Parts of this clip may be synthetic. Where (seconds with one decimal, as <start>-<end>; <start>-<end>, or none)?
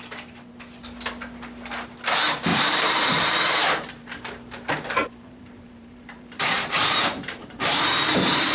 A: 2.5-7.6